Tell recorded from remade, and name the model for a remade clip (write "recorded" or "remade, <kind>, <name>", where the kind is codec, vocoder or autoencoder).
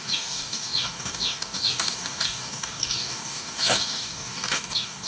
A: remade, codec, DAC